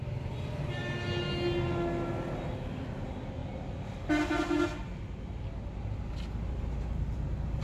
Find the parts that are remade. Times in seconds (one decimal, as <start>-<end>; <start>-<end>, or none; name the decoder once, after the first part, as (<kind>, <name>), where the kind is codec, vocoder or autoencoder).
none